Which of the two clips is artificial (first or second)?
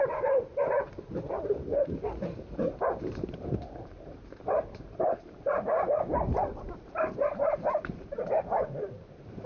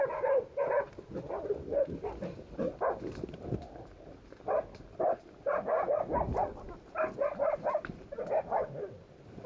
first